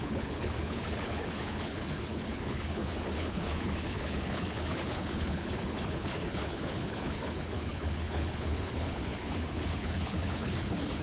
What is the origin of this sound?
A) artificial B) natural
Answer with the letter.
A